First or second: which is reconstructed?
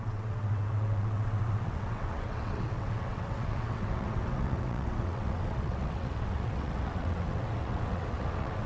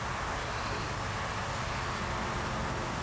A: first